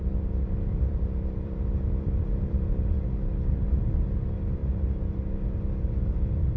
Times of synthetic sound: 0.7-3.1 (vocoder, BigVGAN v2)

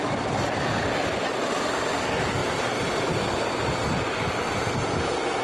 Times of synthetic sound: 2.4-4.6 (vocoder, BigVGAN v2)